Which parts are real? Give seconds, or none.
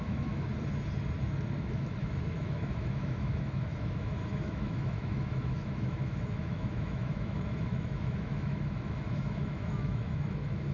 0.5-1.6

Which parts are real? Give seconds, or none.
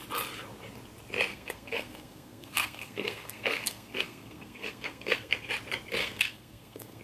0.0-1.3; 5.5-6.0